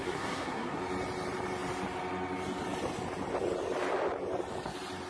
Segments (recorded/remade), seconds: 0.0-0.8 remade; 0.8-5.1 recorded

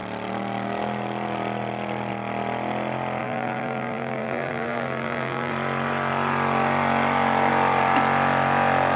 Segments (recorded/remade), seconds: 0.0-3.2 recorded; 3.2-5.5 remade; 5.5-9.0 recorded

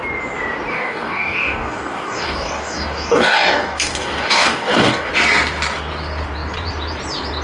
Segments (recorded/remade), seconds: 0.0-0.7 recorded; 0.7-5.1 remade; 5.1-7.4 recorded

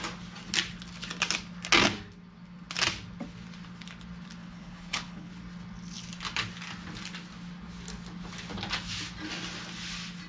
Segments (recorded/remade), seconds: 0.0-4.4 recorded; 4.4-5.3 remade; 5.3-10.3 recorded

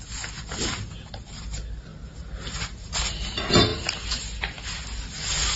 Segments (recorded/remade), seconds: 0.0-5.6 recorded